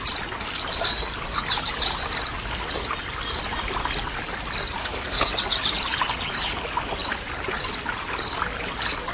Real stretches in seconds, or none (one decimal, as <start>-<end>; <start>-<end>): 0.0-4.8; 5.3-9.1